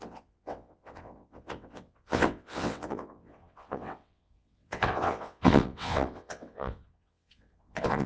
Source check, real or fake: fake